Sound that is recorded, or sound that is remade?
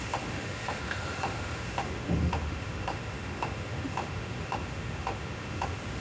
remade